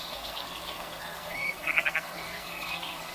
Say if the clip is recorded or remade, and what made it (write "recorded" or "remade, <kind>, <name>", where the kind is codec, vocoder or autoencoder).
remade, codec, SNAC